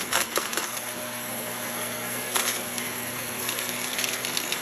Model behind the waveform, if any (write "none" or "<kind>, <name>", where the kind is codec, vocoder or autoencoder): codec, SNAC